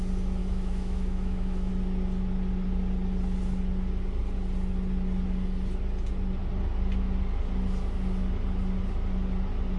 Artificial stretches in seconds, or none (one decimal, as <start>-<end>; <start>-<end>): 0.4-1.7